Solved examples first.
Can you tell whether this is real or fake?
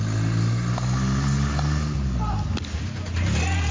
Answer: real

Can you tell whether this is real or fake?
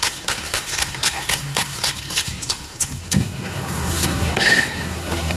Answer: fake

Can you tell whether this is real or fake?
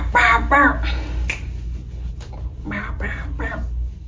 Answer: real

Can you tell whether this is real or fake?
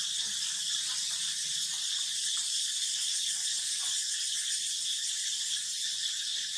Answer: fake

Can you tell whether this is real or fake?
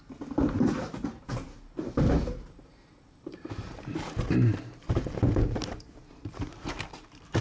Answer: fake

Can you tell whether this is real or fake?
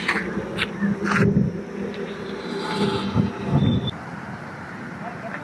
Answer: real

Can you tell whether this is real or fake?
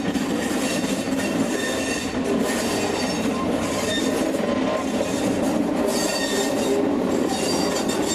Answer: real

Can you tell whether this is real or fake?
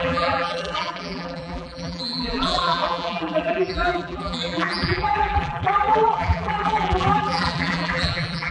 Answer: fake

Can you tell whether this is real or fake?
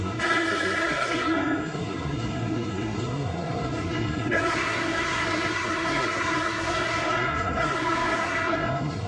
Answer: fake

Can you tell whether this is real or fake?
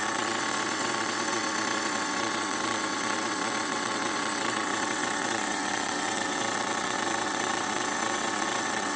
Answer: fake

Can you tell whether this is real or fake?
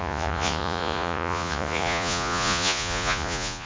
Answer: fake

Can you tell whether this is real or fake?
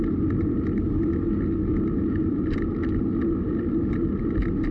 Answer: real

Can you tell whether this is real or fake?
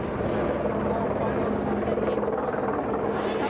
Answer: real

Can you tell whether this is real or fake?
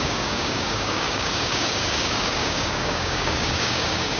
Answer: fake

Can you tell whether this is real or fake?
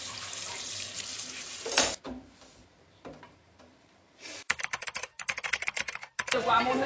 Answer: fake